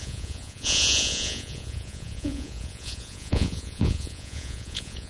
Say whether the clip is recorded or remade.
remade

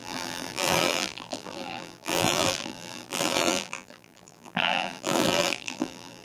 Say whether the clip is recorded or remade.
remade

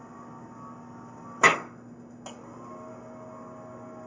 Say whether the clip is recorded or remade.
recorded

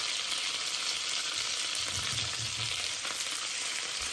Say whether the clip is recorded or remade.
recorded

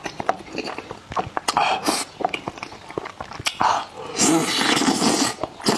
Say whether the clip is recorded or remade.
recorded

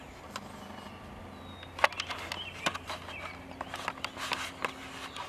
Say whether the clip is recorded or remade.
recorded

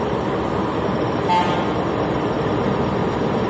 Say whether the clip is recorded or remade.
recorded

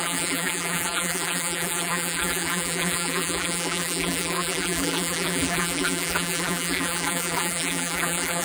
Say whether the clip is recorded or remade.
remade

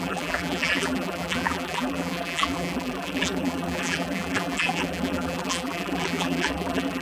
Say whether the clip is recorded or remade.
remade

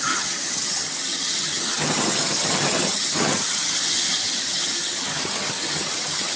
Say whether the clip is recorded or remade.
remade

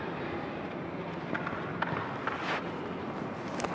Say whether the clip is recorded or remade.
recorded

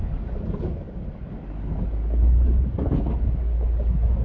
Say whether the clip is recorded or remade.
remade